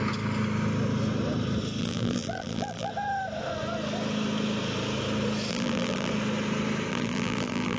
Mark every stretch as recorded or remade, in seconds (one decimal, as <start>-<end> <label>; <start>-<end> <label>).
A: 0.0-1.8 recorded; 1.8-2.9 remade; 2.9-5.5 recorded; 5.5-6.1 remade; 6.1-6.9 recorded; 6.9-7.8 remade